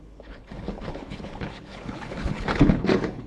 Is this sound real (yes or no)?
no